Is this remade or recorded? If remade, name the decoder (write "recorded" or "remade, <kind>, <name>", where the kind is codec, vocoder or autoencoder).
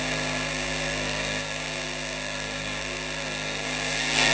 remade, codec, SNAC